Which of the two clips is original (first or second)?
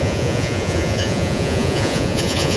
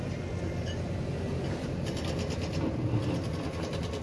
second